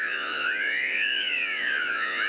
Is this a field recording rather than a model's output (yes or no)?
no